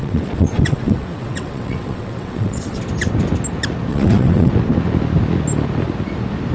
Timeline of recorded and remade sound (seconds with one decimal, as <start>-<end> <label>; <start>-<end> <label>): 0.0-2.8 remade; 2.8-3.9 recorded; 3.9-4.5 remade; 4.5-6.5 recorded